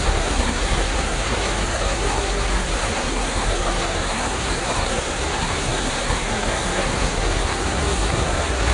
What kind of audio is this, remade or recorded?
remade